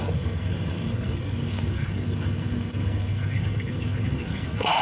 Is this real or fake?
fake